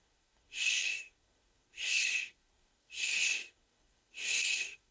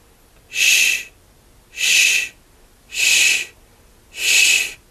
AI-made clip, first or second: first